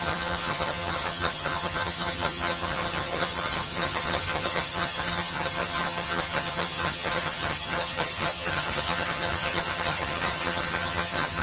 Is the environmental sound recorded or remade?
remade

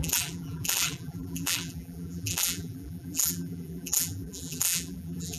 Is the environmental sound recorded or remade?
remade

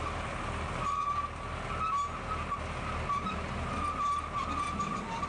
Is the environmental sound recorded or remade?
recorded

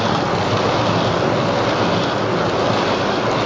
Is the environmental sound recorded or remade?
recorded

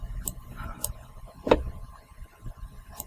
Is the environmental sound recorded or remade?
recorded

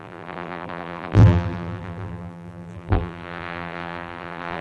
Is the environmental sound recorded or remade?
remade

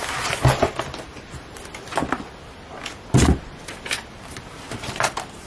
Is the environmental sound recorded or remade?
recorded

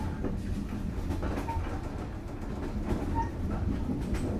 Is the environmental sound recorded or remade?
recorded